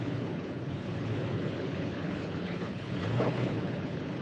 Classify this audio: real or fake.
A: fake